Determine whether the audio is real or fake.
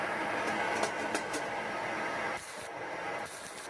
fake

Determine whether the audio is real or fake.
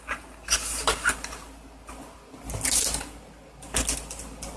real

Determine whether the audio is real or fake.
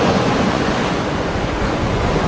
fake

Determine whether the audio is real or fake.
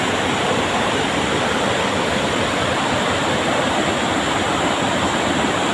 real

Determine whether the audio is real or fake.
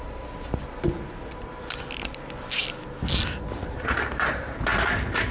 real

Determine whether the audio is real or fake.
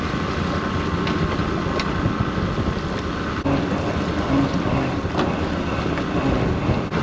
real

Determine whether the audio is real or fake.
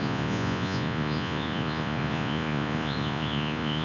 fake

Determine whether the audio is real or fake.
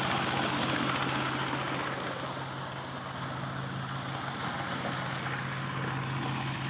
real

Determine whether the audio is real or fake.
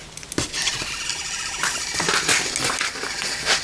real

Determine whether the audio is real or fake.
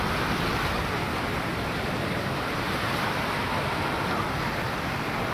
real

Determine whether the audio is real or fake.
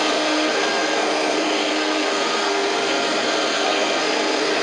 fake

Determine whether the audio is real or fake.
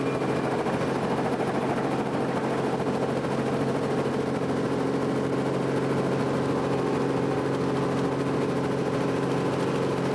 real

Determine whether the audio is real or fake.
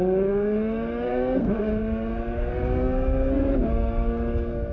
fake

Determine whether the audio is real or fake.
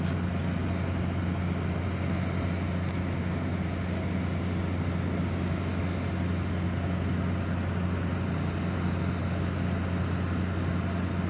real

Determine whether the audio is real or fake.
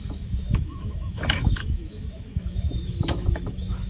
fake